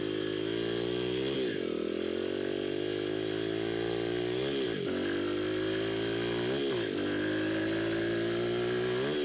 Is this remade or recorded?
recorded